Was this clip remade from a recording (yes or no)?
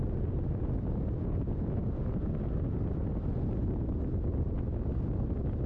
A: no